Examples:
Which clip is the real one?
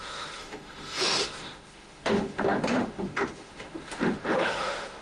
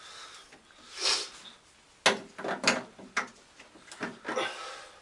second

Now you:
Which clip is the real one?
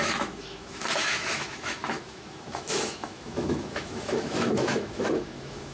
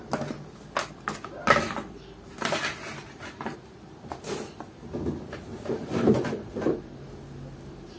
second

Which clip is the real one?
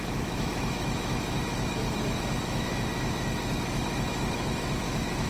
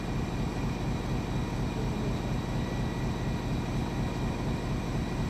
second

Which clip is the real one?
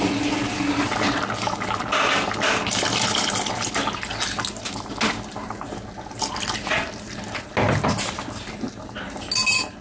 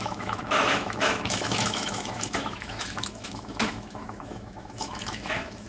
first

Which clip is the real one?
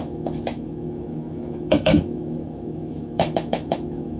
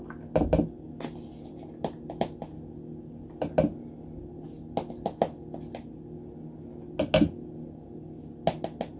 second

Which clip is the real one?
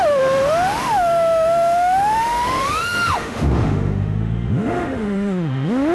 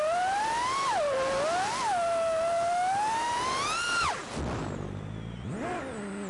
second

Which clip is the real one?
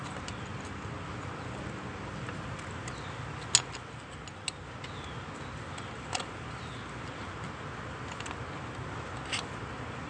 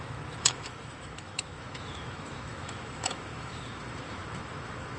first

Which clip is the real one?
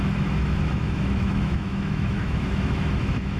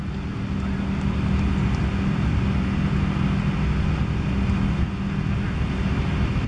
second